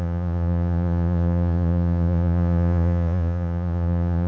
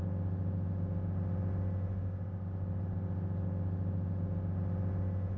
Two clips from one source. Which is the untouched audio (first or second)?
second